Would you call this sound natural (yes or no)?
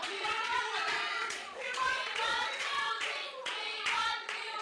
no